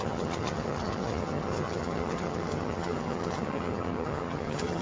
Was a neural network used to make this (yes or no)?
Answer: yes